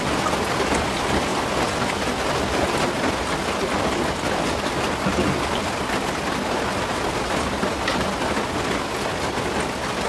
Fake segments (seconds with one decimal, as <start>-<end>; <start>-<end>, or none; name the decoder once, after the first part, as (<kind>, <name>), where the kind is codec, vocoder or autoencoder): none